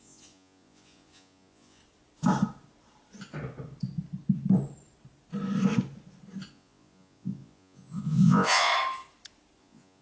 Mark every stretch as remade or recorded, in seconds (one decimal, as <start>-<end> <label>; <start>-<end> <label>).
0.0-1.8 remade; 1.8-6.5 recorded; 6.5-8.7 remade; 8.7-9.6 recorded; 9.6-10.0 remade